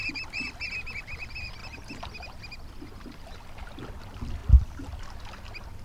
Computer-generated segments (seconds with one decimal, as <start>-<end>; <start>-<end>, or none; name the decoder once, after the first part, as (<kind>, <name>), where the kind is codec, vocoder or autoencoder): none